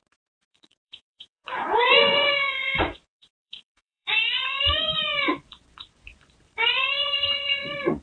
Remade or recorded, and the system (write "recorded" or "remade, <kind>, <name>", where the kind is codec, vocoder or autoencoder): remade, vocoder, Vocos